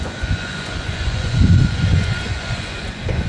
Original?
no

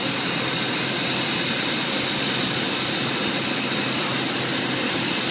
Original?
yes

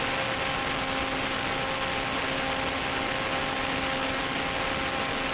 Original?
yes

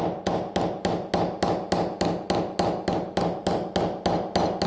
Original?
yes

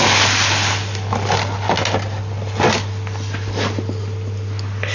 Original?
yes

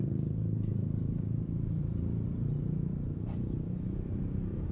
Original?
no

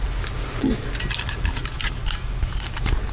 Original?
yes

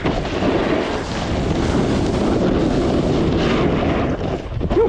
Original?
yes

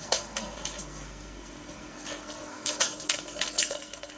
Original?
no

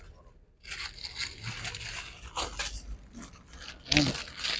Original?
yes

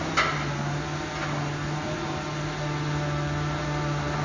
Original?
yes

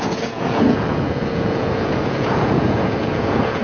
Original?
no